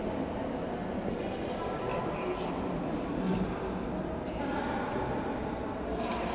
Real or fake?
real